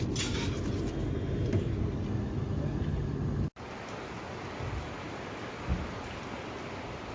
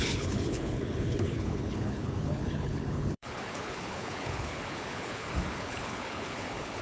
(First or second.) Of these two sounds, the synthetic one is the second